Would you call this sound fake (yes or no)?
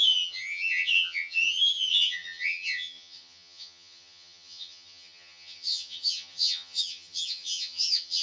yes